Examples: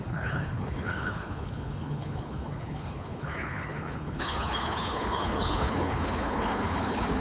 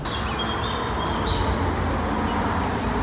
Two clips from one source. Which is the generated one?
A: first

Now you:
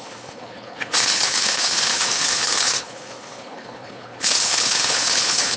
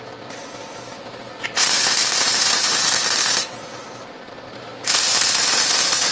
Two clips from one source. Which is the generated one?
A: first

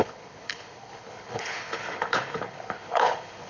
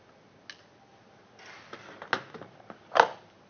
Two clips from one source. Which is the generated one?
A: first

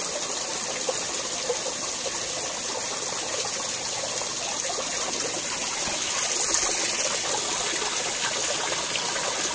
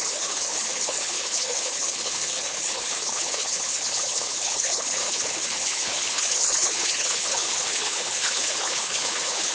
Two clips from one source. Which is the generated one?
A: second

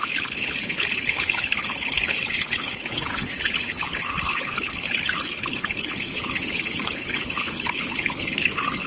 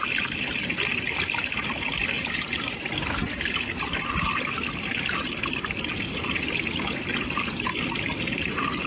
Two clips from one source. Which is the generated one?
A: first